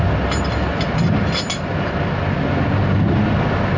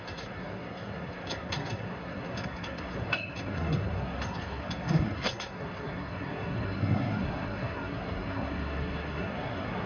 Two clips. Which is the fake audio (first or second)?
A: second